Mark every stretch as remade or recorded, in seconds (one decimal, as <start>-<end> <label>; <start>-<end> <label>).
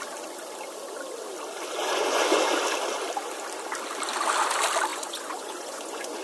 0.0-1.8 recorded; 1.8-2.6 remade; 2.6-4.9 recorded; 4.9-6.2 remade